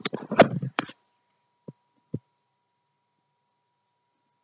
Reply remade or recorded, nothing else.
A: remade